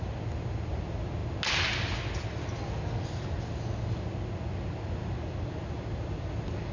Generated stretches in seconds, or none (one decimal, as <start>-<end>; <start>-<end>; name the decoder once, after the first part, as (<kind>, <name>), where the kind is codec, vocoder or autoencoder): none